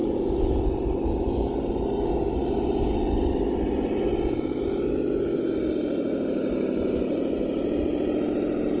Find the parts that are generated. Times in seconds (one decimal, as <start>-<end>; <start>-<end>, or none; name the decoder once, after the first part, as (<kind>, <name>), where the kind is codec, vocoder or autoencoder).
none